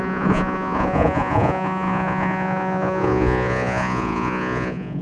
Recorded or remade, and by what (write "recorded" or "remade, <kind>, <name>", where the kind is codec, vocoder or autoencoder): remade, vocoder, Vocos